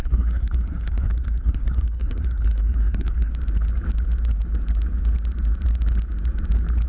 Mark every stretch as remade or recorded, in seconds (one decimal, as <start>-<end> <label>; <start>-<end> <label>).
0.0-3.3 remade; 3.3-6.9 recorded